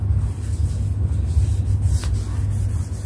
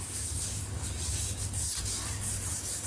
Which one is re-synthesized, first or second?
second